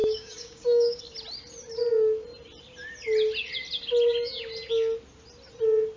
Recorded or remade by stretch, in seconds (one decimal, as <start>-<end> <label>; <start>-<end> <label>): 0.0-1.0 remade; 1.0-6.0 recorded